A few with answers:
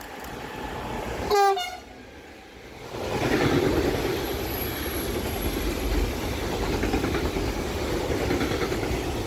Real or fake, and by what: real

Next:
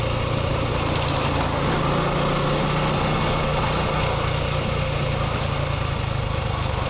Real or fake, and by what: real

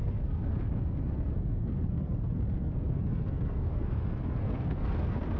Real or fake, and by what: fake, codec, SNAC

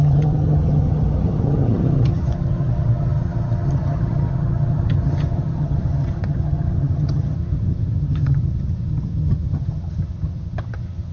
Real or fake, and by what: fake, vocoder, HiFi-GAN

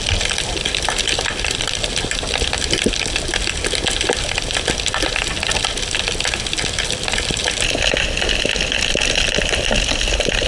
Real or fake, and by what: real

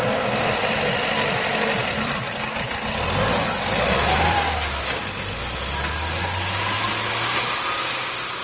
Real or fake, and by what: real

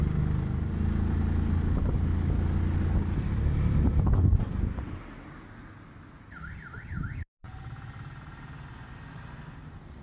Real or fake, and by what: real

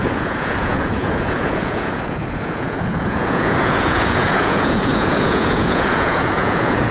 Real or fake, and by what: fake, vocoder, Vocos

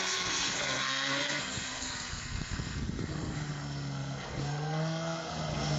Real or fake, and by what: fake, codec, SNAC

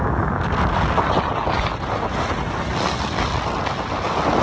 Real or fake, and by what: real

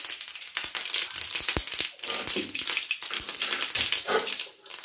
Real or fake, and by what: real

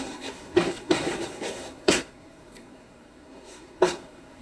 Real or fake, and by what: fake, codec, SNAC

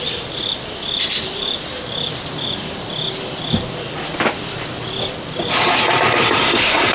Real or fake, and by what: fake, vocoder, BigVGAN v2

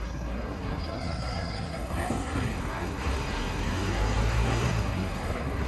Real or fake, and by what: fake, codec, SNAC